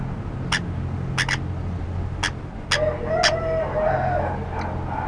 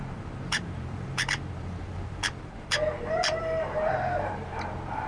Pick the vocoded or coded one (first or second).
second